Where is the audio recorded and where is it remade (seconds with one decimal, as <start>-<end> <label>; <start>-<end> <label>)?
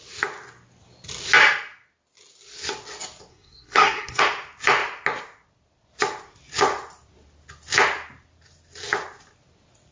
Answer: 0.0-3.3 recorded; 3.3-4.2 remade; 4.2-9.9 recorded